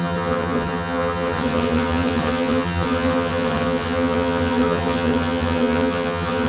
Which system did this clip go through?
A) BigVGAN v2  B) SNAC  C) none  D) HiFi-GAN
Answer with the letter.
D